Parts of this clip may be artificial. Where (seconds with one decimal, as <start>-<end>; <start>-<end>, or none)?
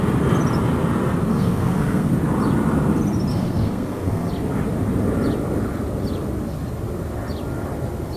1.3-2.1; 3.3-4.3